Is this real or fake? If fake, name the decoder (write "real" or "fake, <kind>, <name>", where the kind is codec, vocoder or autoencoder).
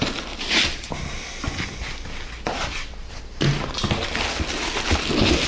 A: real